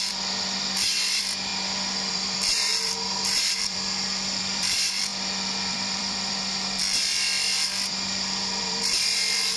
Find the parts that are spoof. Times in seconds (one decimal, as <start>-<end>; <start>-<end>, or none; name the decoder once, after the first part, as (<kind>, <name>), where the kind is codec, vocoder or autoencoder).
0.0-1.5 (vocoder, BigVGAN v2); 2.1-6.8; 7.9-9.6

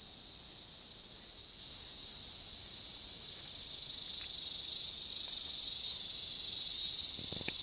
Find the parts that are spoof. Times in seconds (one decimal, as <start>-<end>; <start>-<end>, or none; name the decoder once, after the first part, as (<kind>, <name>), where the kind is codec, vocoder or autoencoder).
none

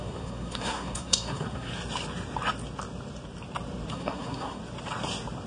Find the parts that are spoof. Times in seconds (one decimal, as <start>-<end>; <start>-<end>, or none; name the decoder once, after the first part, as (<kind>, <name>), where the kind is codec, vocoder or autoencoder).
0.0-1.7 (codec, SNAC); 3.9-4.6

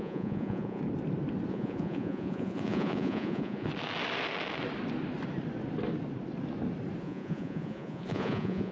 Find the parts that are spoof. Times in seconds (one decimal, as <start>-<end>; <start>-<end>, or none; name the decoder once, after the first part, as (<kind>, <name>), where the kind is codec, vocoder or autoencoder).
0.0-0.8 (vocoder, Vocos); 1.5-3.7; 7.0-8.7